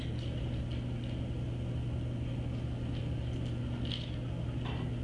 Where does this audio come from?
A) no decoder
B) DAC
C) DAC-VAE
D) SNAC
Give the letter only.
A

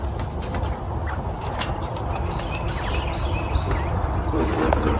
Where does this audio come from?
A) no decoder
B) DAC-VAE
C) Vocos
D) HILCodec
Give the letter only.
A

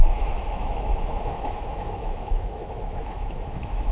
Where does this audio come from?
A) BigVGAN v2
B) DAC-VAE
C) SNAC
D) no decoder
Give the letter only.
B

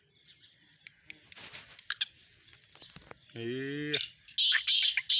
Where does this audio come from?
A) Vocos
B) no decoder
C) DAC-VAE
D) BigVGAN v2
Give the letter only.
B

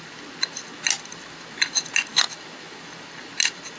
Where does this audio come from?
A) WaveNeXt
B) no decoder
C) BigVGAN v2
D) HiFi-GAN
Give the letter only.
B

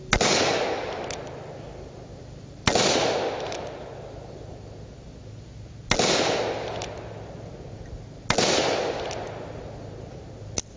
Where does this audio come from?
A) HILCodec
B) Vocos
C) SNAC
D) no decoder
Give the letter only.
D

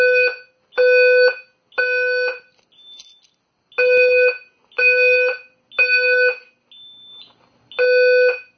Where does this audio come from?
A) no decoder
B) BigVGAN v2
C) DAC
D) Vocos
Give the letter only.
A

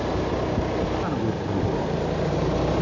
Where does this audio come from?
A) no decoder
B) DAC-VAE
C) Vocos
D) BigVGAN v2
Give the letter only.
A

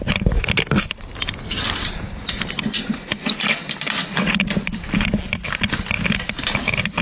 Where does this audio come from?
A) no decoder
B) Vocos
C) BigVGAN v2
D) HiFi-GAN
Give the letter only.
A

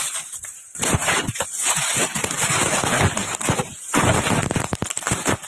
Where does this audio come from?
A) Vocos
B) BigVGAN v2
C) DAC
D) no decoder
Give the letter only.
B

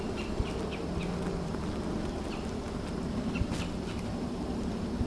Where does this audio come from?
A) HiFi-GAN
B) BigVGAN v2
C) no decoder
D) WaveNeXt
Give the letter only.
C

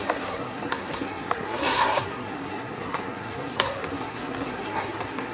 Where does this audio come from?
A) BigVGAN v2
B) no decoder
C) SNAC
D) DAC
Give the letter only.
C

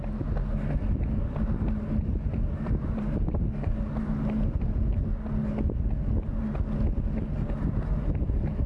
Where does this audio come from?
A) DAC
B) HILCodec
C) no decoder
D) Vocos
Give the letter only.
C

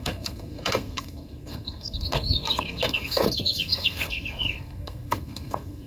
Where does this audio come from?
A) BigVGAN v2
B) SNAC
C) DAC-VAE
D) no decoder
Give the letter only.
B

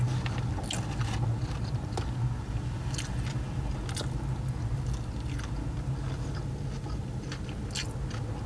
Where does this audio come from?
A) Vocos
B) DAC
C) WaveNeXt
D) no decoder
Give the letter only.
D